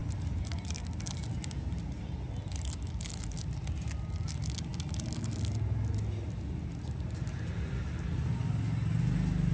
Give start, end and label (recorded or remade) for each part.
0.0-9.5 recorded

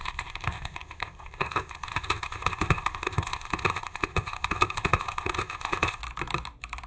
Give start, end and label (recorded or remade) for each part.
0.0-6.0 remade; 6.0-6.9 recorded